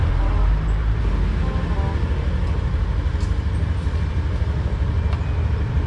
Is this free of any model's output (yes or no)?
yes